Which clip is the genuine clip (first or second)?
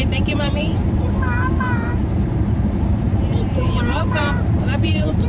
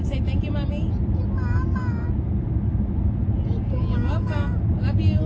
second